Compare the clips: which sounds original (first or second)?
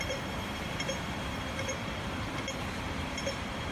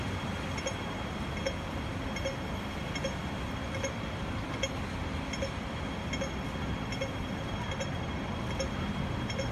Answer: second